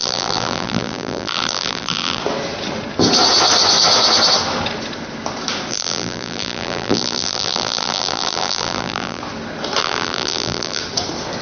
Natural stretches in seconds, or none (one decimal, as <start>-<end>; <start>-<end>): 2.2-5.7; 9.2-9.8; 10.8-11.4